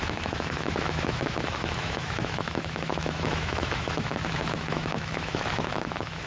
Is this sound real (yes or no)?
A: no